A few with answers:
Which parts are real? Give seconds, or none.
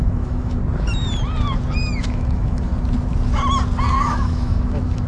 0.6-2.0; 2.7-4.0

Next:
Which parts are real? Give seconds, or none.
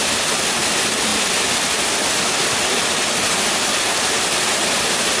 0.0-5.2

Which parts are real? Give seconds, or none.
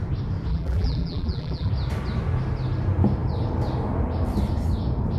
0.0-0.5; 1.7-5.2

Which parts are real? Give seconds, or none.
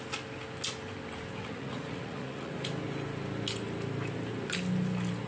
0.0-1.4; 2.5-5.3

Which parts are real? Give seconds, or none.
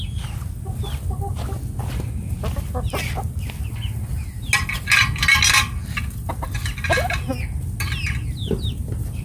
0.0-9.2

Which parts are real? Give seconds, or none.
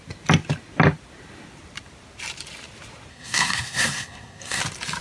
0.0-3.1; 4.6-5.0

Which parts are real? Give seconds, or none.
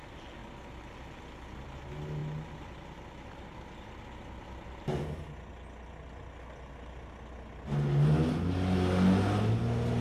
0.0-10.0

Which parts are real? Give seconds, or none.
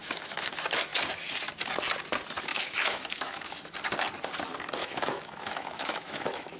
0.5-2.5; 3.5-4.8